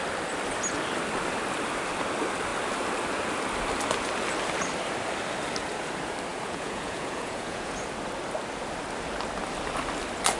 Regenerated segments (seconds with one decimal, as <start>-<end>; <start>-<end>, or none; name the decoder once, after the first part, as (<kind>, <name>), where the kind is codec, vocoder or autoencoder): 6.3-7.8 (vocoder, Vocos)